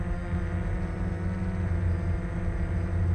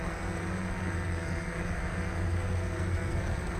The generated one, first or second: second